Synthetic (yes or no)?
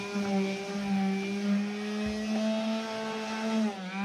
no